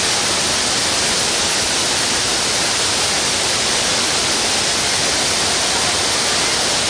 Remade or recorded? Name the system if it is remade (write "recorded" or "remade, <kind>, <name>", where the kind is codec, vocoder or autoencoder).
recorded